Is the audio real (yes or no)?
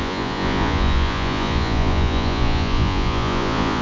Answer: no